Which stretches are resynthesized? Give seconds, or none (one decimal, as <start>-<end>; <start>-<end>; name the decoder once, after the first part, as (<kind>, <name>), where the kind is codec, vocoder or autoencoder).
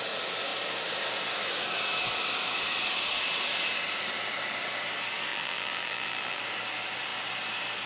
5.3-6.4 (vocoder, BigVGAN v2)